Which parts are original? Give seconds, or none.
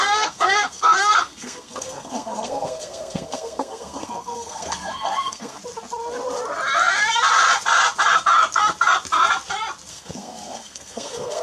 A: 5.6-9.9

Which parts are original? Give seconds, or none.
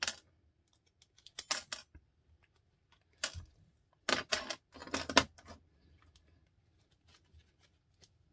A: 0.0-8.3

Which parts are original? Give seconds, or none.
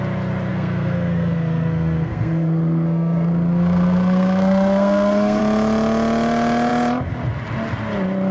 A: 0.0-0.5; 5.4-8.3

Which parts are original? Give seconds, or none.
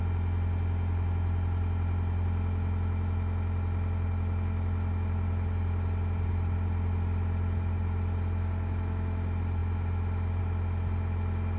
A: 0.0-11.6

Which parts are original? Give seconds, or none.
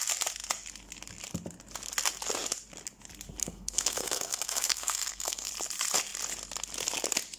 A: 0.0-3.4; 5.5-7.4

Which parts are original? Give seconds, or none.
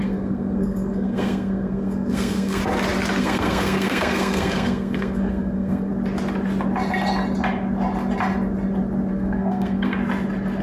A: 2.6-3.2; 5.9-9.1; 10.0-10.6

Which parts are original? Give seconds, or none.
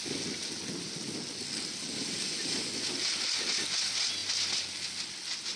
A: 0.0-5.6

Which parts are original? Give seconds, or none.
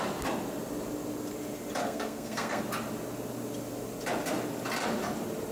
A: 0.0-1.8; 2.6-5.5